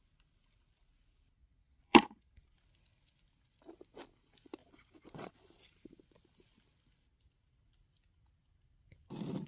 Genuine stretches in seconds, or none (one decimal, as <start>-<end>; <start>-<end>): 0.0-1.4; 2.3-4.6; 5.3-9.5